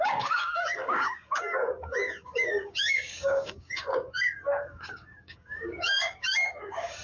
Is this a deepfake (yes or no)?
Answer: yes